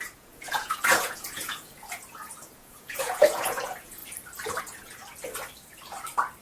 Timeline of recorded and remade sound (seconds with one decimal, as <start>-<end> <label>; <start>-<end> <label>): 0.0-4.0 remade; 4.0-4.6 recorded; 4.6-5.0 remade; 5.0-6.4 recorded